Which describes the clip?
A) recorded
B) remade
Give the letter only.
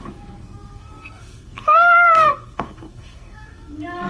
B